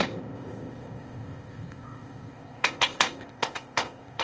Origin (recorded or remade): remade